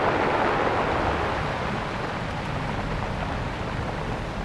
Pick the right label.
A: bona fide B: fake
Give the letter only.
A